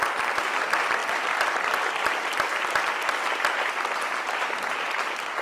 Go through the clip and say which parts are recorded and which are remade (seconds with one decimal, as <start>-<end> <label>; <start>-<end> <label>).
0.0-5.4 recorded